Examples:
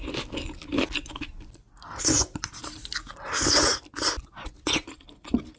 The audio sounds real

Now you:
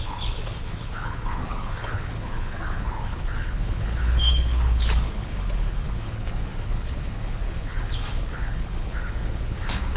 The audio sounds fake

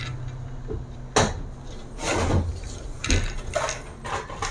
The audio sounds real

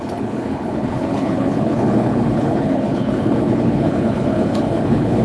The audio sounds fake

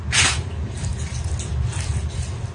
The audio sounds real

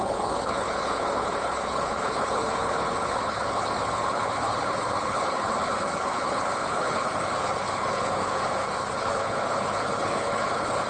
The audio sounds fake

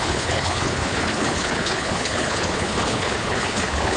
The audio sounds fake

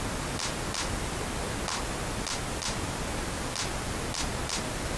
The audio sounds real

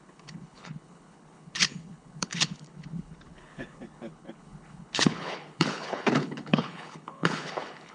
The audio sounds fake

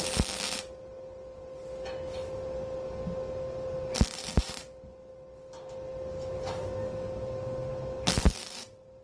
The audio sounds real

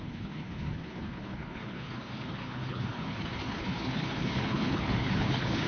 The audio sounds fake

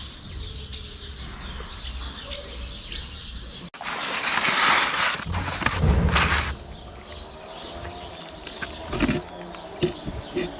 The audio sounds real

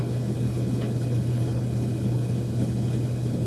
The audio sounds fake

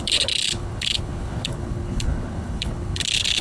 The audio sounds fake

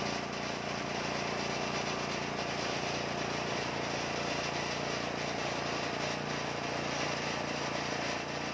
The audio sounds real